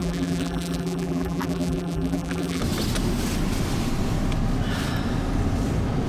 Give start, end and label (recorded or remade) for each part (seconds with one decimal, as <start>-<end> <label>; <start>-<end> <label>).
0.0-2.6 remade; 2.6-6.1 recorded